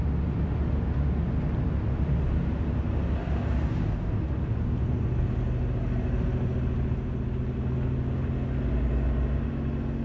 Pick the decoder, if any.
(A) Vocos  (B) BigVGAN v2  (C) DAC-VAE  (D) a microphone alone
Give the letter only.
D